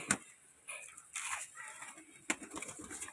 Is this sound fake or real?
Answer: real